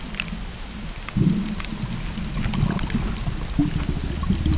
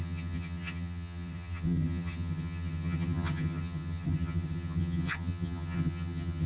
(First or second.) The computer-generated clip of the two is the second